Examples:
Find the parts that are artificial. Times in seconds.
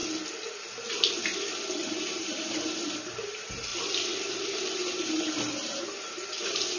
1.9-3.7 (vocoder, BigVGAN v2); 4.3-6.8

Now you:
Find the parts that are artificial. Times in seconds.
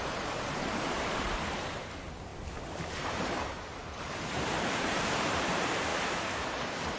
0.0-2.3 (vocoder, BigVGAN v2); 3.0-5.9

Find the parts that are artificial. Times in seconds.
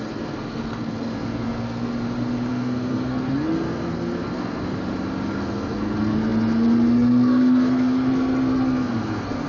0.0-1.9 (codec, SNAC); 2.5-4.7; 5.3-9.5